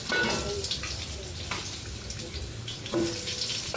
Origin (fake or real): real